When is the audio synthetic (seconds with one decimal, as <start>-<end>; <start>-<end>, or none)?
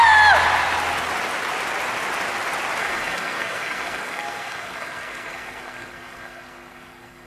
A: 2.8-7.3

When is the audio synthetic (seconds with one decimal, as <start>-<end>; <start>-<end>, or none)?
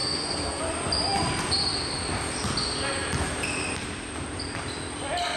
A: 0.0-0.6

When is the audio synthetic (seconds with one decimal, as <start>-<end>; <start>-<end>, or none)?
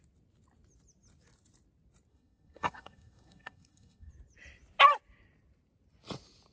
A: 2.1-4.1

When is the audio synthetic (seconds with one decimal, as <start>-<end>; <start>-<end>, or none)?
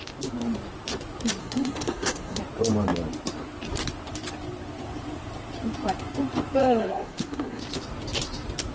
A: 1.4-2.4; 6.6-7.6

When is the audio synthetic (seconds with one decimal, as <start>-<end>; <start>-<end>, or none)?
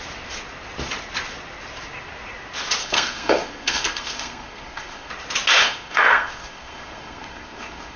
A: 2.8-5.1; 5.6-8.0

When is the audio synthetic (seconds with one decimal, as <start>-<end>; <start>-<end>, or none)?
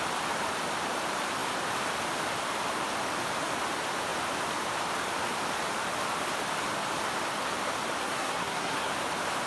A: 8.0-8.9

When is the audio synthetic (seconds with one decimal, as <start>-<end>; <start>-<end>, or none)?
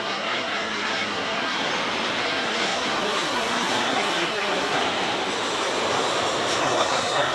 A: 0.0-1.7; 2.2-4.8; 6.6-7.3